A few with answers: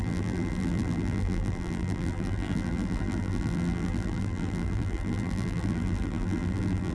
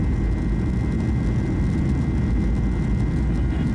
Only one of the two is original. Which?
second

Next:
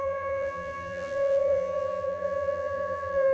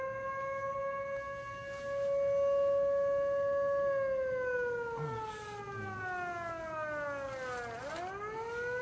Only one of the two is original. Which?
second